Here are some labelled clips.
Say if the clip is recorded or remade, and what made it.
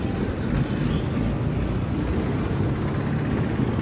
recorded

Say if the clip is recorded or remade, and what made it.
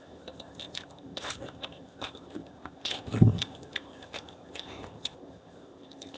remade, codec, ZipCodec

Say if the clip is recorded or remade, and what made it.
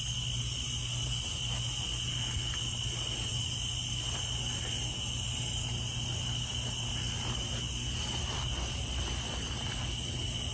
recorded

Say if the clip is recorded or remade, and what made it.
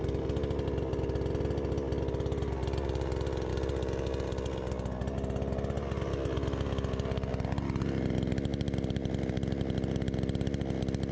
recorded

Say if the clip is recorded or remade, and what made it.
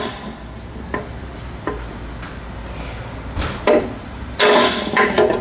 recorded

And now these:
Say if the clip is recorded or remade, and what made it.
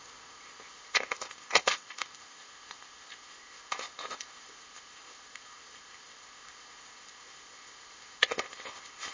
remade, codec, ZipCodec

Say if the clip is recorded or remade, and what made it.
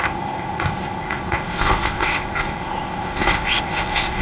remade, codec, ZipCodec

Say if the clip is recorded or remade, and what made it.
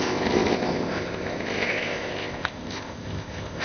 remade, codec, ZipCodec